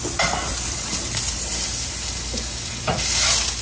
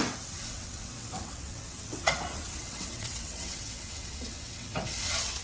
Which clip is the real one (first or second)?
first